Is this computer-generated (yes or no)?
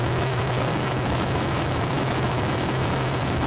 yes